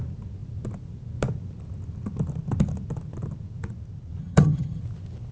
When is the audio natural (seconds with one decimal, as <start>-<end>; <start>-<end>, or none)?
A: 0.0-4.2; 4.8-5.3